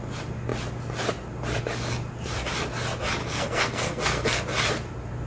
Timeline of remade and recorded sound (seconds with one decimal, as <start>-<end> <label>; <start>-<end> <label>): 0.0-3.2 recorded; 3.2-4.4 remade; 4.4-5.3 recorded